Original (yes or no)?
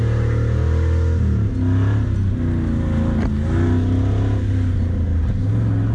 yes